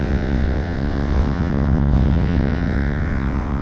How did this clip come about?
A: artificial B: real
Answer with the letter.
A